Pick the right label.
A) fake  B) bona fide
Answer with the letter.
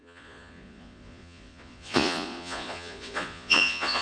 A